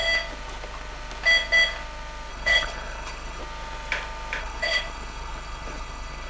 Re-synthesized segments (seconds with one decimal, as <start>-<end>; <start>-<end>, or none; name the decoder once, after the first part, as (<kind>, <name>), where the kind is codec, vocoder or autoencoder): 2.3-3.4 (codec, HILCodec); 4.4-6.3